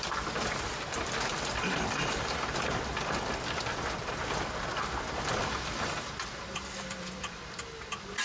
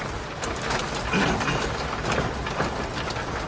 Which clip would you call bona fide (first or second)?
second